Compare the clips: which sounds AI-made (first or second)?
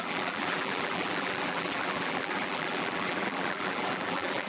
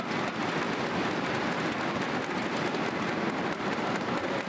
first